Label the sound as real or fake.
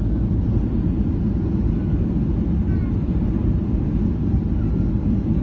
real